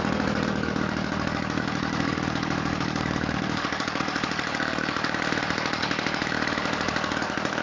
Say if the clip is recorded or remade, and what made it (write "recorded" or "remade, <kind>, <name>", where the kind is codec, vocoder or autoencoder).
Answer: remade, codec, DAC